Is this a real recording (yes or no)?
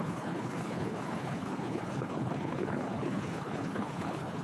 no